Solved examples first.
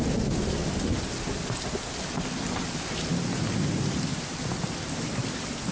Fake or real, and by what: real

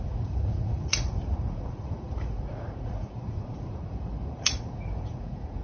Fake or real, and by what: fake, vocoder, Vocos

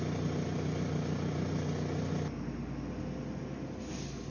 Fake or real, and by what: real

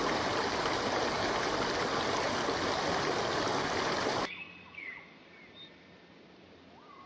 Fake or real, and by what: real